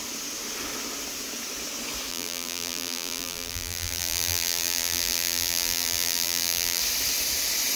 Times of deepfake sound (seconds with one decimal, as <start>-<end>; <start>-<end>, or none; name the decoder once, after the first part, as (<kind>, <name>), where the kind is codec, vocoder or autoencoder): 2.1-6.8 (vocoder, BigVGAN v2)